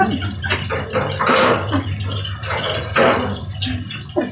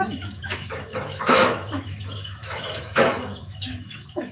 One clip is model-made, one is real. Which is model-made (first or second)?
second